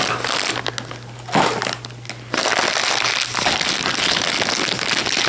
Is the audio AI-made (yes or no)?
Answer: no